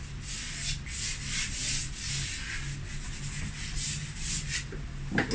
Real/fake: real